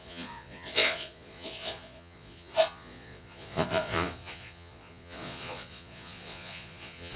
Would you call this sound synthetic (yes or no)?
yes